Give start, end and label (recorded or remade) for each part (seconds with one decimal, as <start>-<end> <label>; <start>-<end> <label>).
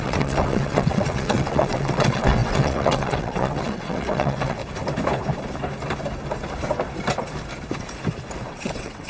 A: 0.0-4.6 remade; 4.6-8.5 recorded; 8.5-9.1 remade